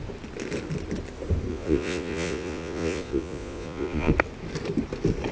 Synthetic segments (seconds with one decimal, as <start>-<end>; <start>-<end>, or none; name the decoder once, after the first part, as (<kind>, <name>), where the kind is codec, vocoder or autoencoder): 1.5-4.1 (vocoder, Vocos)